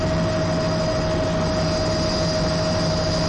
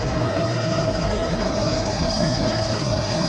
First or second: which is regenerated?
second